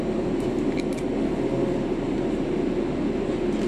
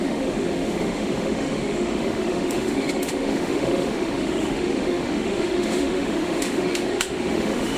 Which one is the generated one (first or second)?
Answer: second